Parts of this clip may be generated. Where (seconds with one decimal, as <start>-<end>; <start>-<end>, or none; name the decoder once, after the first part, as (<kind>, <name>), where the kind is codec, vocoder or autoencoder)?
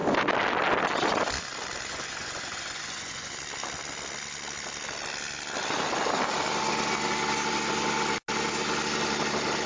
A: 1.9-3.3 (vocoder, Vocos)